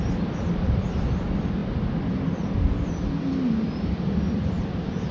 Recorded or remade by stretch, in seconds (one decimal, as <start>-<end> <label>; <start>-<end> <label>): 0.0-5.1 recorded